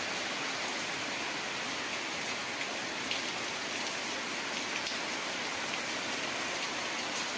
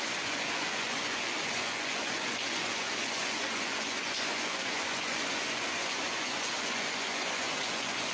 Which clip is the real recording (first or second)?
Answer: first